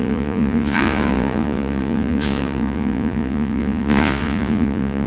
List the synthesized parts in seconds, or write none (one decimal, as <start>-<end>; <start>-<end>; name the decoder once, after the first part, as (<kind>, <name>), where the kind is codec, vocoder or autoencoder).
0.0-5.1 (vocoder, Vocos)